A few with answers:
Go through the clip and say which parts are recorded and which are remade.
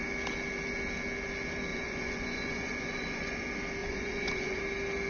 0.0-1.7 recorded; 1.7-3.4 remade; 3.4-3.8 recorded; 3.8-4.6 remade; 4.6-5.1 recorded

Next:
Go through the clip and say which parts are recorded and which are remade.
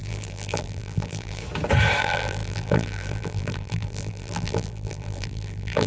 0.0-1.4 remade; 1.4-2.0 recorded; 2.0-5.9 remade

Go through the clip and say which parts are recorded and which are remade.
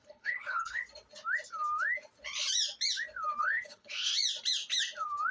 0.0-0.8 remade; 0.8-3.4 recorded; 3.4-4.1 remade; 4.1-5.3 recorded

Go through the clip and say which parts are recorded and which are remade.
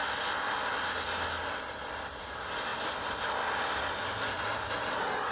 0.0-5.3 recorded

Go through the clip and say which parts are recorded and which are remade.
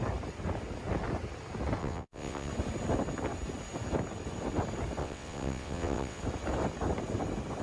0.0-1.8 recorded; 1.8-2.5 remade; 2.5-5.0 recorded; 5.0-6.2 remade; 6.2-7.6 recorded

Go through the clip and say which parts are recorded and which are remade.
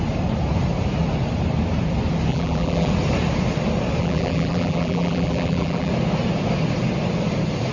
0.0-2.3 recorded; 2.3-2.9 remade; 2.9-4.0 recorded; 4.0-5.9 remade; 5.9-7.7 recorded